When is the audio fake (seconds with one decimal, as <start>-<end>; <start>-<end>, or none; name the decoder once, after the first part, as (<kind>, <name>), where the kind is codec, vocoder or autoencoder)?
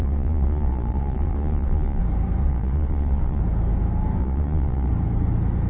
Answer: 0.0-2.0 (vocoder, Vocos); 2.4-3.4; 4.2-4.9